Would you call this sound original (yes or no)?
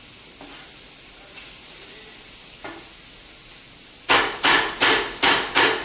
yes